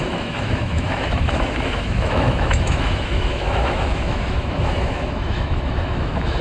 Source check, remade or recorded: remade